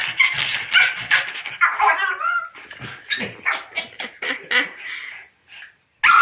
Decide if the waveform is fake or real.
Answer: real